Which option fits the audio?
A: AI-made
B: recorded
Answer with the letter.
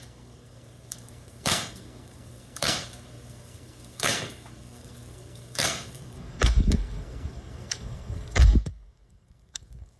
A